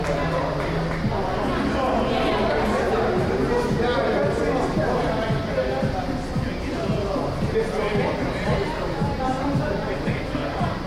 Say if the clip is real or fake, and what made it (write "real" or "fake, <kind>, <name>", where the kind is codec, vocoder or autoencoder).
real